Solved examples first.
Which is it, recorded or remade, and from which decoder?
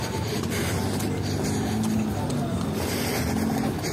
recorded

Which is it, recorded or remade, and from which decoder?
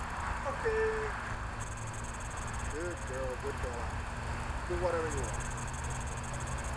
recorded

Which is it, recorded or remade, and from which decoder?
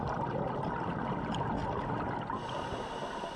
recorded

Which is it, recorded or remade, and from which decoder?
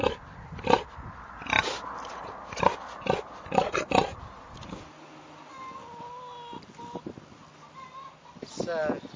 recorded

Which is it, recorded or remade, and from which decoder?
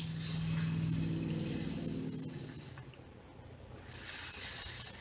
recorded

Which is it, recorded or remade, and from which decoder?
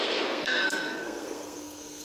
remade, codec, SNAC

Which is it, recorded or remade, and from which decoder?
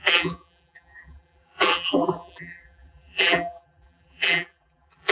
remade, vocoder, BigVGAN v2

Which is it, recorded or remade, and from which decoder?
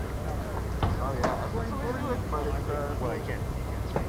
recorded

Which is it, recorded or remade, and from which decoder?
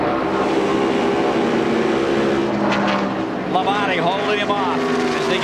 recorded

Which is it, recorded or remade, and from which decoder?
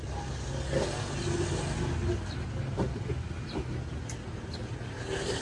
recorded